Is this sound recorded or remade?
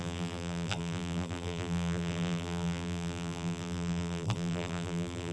remade